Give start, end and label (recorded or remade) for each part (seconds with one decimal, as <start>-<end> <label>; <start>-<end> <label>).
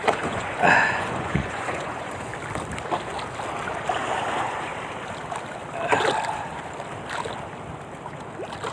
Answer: 0.0-2.3 remade; 2.3-4.3 recorded; 4.3-4.7 remade; 4.7-8.7 recorded